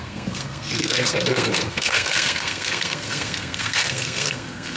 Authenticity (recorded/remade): remade